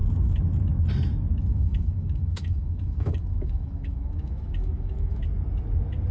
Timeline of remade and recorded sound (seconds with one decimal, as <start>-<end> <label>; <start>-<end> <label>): 0.0-1.5 recorded; 1.5-5.2 remade; 5.2-6.1 recorded